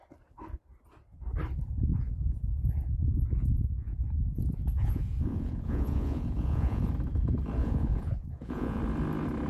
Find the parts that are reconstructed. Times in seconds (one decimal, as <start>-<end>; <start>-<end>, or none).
1.9-6.9; 7.6-8.8